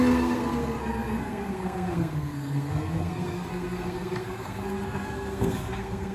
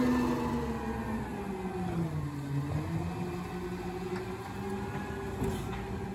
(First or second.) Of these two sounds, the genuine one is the second